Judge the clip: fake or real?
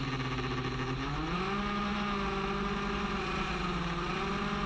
real